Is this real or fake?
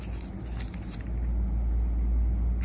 real